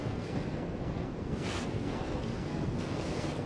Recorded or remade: remade